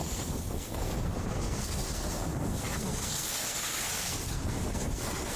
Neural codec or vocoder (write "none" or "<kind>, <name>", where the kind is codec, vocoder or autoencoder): codec, SNAC